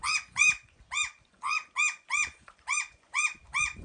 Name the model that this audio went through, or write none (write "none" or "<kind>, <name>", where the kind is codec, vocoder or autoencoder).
vocoder, Vocos